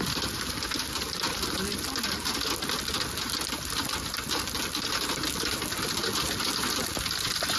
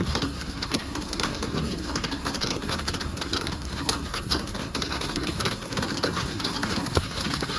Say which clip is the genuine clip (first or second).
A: first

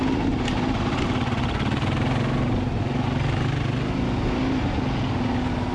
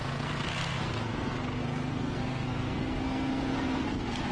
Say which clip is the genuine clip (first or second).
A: first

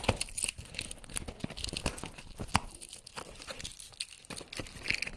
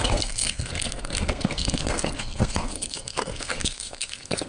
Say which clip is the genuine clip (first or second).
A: first